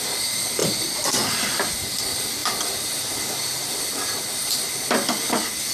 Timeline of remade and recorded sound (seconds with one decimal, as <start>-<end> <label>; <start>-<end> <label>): 0.0-0.6 recorded; 0.6-2.0 remade; 2.0-2.4 recorded; 2.4-4.7 remade; 4.7-5.7 recorded